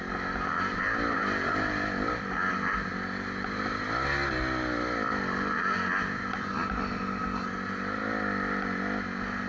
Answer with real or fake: real